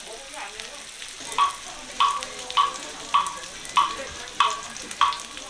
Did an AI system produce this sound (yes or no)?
no